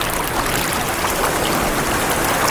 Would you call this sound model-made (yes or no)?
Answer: no